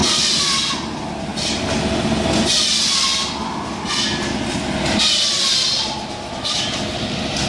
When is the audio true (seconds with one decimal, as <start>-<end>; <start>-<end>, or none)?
0.6-7.5